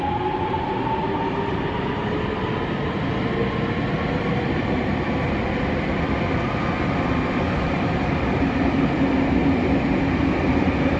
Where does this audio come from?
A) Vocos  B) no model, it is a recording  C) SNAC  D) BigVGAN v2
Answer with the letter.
B